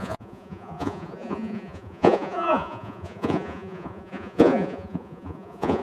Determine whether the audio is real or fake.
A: fake